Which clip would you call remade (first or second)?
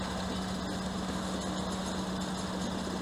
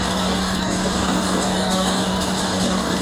second